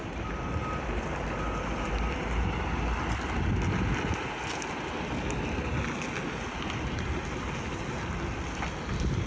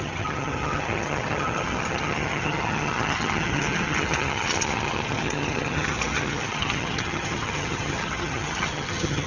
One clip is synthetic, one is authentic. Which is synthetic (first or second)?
second